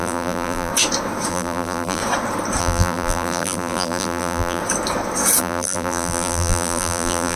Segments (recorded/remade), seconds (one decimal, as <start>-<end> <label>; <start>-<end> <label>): 0.0-0.7 remade; 0.7-1.3 recorded; 1.3-2.0 remade; 2.0-2.6 recorded; 2.6-4.6 remade; 4.6-5.4 recorded; 5.4-7.4 remade